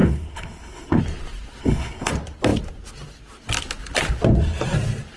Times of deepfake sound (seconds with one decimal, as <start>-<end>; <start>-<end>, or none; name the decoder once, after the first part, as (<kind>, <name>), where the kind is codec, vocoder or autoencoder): 0.0-1.0 (codec, HILCodec); 1.6-2.1